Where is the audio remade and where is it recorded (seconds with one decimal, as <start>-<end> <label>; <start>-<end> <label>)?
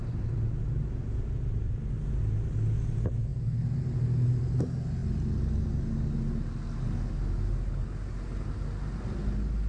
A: 0.0-9.7 recorded